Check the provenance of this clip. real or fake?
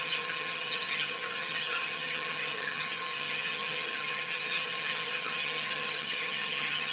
fake